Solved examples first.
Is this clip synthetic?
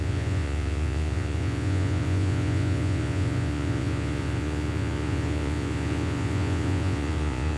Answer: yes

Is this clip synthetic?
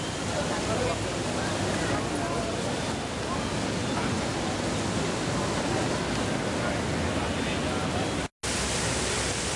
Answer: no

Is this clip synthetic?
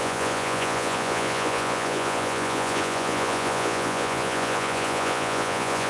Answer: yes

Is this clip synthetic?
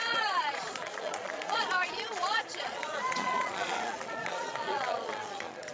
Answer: yes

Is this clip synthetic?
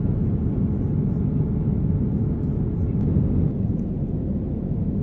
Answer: no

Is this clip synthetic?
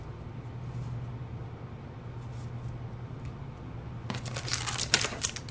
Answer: no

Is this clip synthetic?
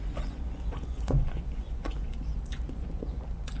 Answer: yes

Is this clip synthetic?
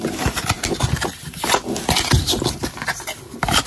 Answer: no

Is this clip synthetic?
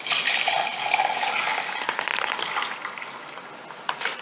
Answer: no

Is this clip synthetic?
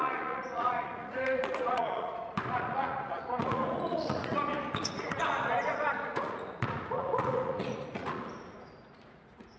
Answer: yes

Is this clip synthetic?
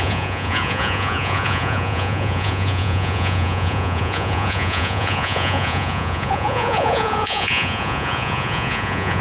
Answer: yes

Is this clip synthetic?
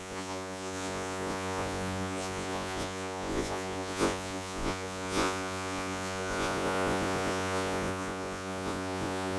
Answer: yes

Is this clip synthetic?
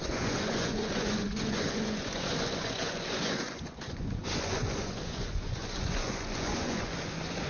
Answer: yes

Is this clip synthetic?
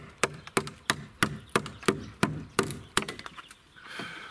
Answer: no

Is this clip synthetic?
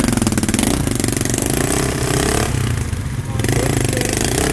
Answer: no